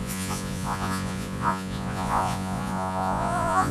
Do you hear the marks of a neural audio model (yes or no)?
yes